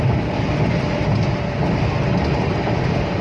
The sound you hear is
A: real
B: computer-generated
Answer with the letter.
A